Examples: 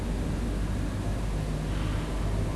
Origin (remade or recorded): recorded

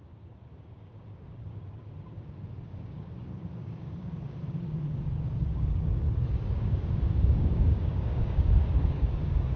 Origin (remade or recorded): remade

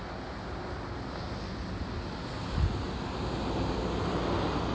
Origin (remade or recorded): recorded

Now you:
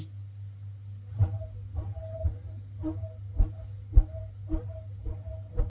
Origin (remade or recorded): recorded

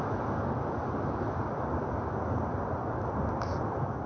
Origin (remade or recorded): recorded